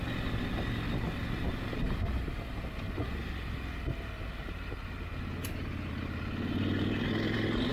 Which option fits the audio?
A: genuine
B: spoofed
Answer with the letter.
A